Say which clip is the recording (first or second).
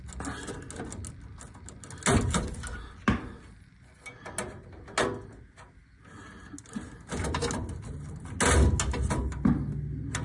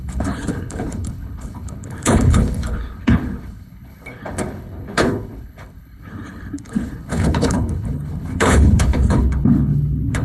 first